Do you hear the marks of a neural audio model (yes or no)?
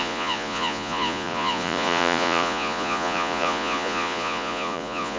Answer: yes